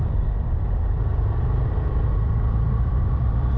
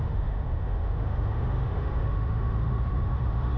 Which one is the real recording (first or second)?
first